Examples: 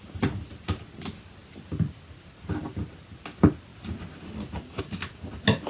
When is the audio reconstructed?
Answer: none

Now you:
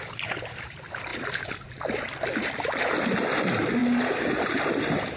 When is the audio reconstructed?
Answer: none

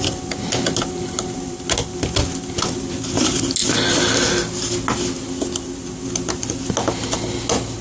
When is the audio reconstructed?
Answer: none

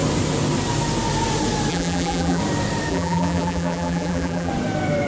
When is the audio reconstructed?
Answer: 1.7-2.4 (vocoder, BigVGAN v2); 2.9-4.5

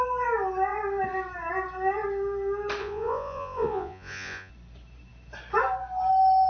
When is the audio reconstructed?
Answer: 2.8-4.5 (vocoder, Vocos)